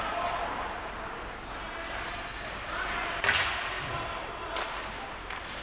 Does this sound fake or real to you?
real